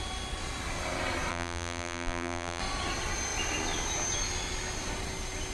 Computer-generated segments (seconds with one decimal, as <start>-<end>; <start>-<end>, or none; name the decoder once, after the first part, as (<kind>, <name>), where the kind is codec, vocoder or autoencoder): 1.3-2.6 (vocoder, BigVGAN v2)